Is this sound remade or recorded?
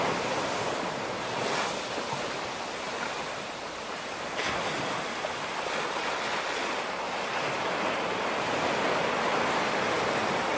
recorded